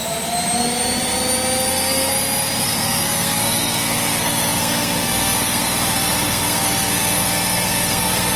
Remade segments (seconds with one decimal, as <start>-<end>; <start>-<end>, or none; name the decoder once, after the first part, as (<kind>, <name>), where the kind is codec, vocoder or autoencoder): 1.7-2.1 (codec, SNAC); 2.6-8.4